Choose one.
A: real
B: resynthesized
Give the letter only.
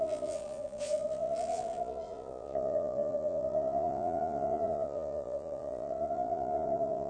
B